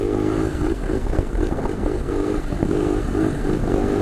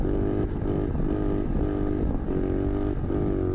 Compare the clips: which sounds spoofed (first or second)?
first